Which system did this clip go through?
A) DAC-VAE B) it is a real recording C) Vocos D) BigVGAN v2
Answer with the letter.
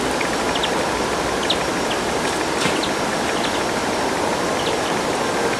B